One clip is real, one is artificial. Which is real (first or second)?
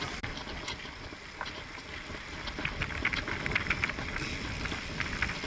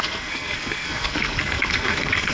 first